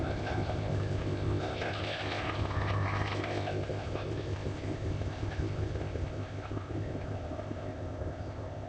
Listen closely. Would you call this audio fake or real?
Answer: fake